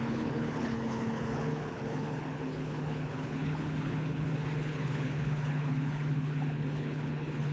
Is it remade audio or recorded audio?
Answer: remade